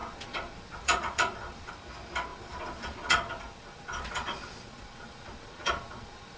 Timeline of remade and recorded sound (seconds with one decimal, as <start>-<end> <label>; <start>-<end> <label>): 0.0-1.7 remade; 1.7-2.3 recorded; 2.3-6.4 remade